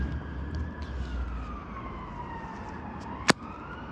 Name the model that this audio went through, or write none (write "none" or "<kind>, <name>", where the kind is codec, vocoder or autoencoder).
none